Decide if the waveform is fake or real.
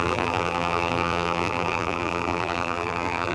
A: fake